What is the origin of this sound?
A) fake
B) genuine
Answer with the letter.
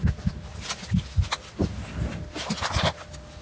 B